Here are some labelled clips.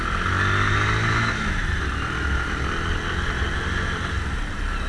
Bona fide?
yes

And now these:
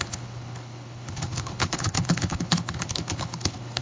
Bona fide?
no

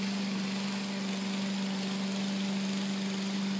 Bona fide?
yes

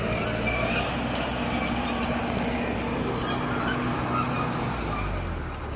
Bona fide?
yes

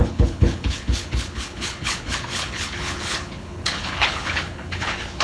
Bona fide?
no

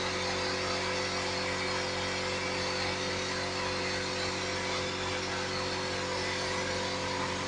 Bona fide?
yes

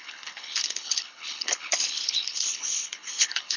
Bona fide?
no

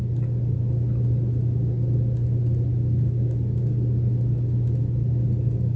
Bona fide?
yes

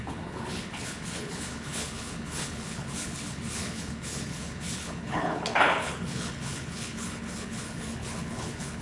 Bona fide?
no